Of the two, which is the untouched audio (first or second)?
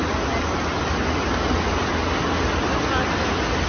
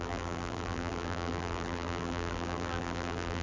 first